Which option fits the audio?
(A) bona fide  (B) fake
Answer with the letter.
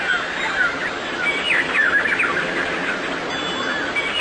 A